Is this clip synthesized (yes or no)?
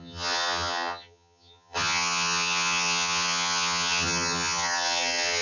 yes